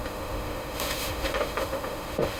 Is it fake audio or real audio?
fake